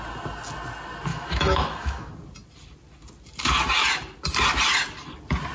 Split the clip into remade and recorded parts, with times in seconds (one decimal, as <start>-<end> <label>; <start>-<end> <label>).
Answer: 0.0-1.1 recorded; 1.1-2.1 remade; 2.1-5.5 recorded